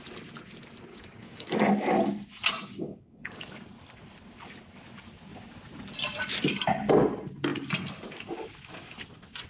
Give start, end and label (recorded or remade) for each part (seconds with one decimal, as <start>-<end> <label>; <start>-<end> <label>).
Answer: 0.0-0.9 recorded; 0.9-1.7 remade; 1.7-2.7 recorded; 2.7-3.4 remade; 3.4-9.5 recorded